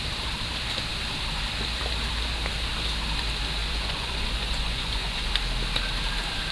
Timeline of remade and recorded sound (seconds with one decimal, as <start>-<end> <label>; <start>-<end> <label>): 0.0-3.6 recorded; 3.6-5.3 remade; 5.3-6.5 recorded